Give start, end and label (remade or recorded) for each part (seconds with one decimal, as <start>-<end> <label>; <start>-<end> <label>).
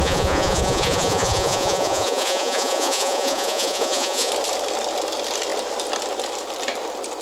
0.0-4.3 remade; 4.3-7.2 recorded